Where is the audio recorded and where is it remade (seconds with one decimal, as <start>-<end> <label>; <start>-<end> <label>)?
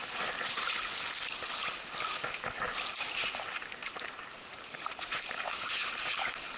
0.0-3.8 recorded; 3.8-6.6 remade